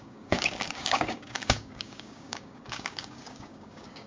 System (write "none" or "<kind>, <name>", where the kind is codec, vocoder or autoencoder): codec, DAC